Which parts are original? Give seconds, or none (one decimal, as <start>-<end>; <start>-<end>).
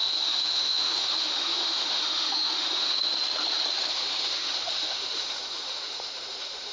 3.1-3.9